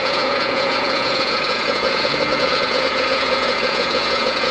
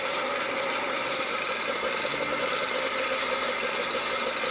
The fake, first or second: first